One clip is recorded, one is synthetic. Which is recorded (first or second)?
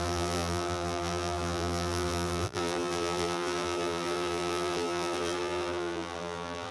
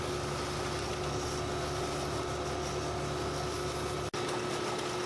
second